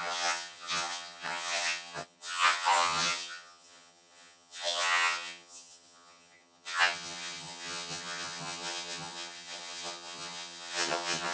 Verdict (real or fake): fake